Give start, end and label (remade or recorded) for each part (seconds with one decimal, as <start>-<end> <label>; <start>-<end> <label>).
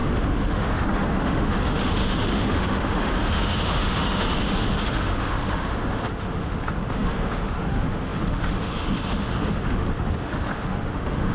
0.0-11.3 remade